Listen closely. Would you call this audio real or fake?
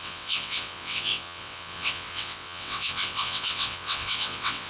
fake